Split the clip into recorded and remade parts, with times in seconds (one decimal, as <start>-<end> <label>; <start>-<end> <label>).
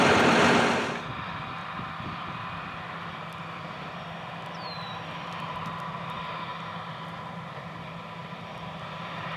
0.0-1.6 recorded; 1.6-5.4 remade; 5.4-8.2 recorded; 8.2-9.4 remade